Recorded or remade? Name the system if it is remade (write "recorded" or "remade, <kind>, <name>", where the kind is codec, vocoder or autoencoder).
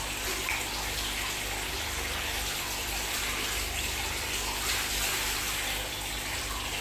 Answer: recorded